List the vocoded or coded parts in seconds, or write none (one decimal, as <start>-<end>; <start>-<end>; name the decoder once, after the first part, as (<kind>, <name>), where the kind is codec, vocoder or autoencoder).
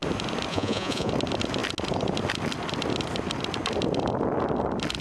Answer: 0.5-1.1 (vocoder, Vocos)